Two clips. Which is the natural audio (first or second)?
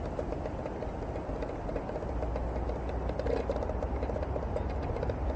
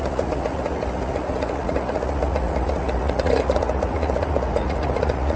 first